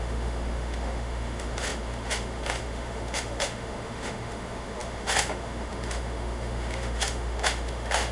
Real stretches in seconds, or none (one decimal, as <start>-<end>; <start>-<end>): none